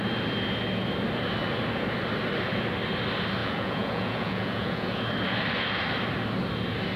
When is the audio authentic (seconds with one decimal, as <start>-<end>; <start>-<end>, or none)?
0.0-3.4; 5.0-7.0